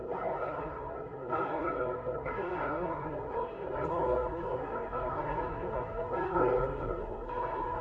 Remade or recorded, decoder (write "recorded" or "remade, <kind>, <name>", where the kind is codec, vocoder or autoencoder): remade, codec, SNAC